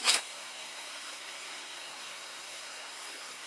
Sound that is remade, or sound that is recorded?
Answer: remade